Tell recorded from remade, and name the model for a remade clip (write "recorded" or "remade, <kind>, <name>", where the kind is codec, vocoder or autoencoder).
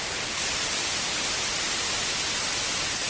recorded